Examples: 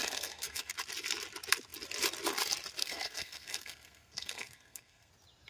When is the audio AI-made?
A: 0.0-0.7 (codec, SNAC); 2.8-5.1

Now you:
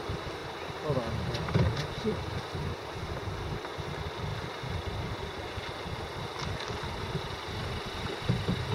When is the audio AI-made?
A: 0.4-1.5 (vocoder, BigVGAN v2); 4.3-5.6

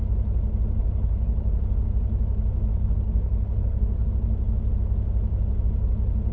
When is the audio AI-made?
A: 0.8-1.6 (codec, HILCodec); 2.7-4.1